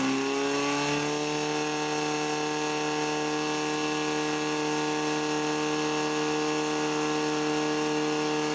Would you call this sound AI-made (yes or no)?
no